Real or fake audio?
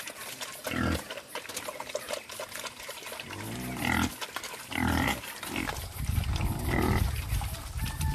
real